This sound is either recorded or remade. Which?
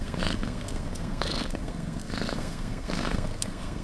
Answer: remade